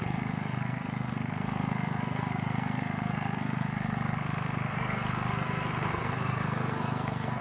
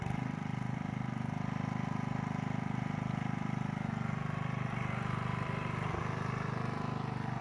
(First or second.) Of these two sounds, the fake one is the first